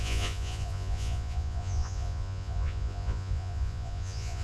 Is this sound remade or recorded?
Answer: remade